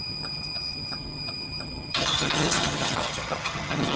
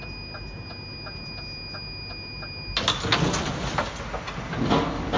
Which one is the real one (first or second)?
second